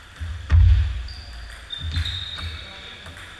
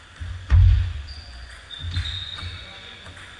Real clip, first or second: first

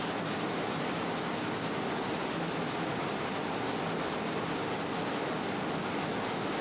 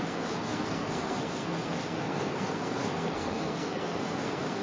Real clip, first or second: first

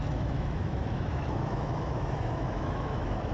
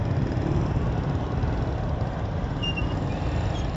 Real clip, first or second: second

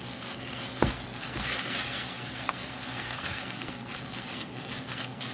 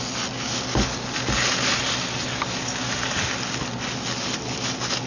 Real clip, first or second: second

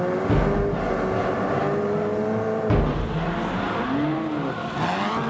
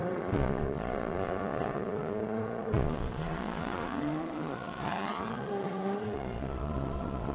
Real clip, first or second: first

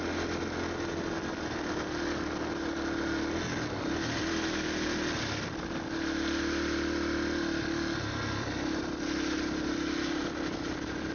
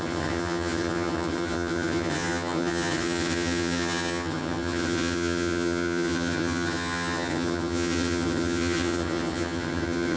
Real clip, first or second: first